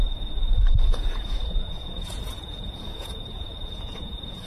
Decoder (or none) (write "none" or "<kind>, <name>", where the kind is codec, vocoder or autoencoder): vocoder, Vocos